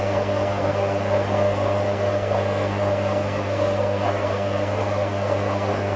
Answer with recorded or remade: remade